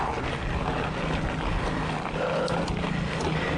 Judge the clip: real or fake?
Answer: real